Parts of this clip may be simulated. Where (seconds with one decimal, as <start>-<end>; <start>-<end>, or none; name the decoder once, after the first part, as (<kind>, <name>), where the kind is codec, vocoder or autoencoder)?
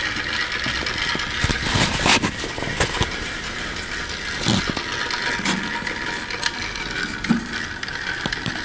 none